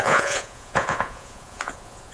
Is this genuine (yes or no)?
no